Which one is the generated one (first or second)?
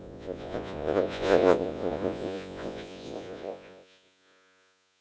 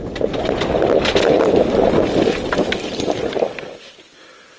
first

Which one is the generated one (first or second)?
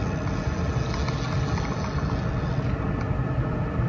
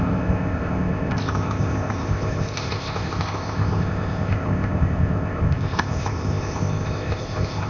second